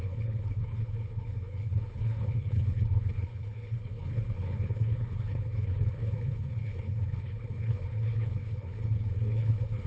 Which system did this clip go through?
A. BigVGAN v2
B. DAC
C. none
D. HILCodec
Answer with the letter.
D